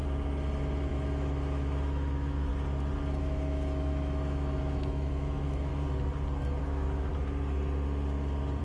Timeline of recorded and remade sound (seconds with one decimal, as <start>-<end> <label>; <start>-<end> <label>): 0.0-0.9 recorded; 0.9-2.5 remade; 2.5-3.2 recorded; 3.2-5.7 remade; 5.7-6.6 recorded; 6.6-7.1 remade; 7.1-8.6 recorded